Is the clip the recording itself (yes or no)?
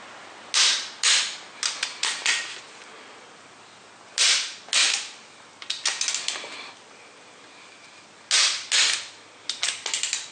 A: yes